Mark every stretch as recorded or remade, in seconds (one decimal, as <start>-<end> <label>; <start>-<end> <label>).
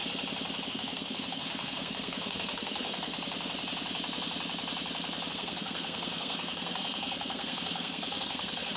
0.0-0.7 recorded; 0.7-3.1 remade; 3.1-5.3 recorded; 5.3-8.8 remade